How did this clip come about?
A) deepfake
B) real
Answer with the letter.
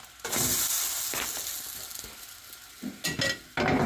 B